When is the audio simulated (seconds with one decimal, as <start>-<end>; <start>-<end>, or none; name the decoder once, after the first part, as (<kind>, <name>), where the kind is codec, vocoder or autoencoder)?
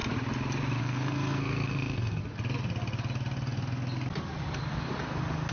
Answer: 0.8-2.2 (codec, SNAC)